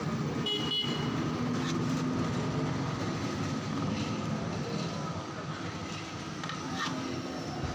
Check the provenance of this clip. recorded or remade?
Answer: recorded